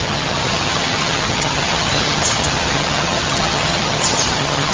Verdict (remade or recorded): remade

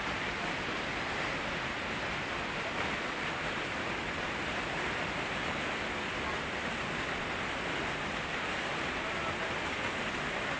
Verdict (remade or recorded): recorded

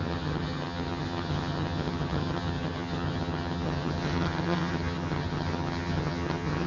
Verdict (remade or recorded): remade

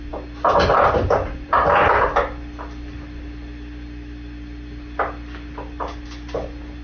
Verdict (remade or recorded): recorded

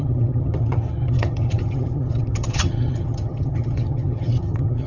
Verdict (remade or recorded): remade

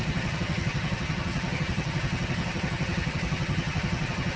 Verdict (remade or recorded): remade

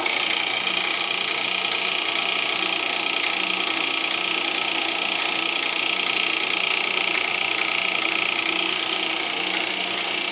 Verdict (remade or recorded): recorded